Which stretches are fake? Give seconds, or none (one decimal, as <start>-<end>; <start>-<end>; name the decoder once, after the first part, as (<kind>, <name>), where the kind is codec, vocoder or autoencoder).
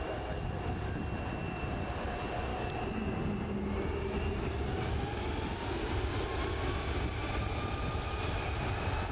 none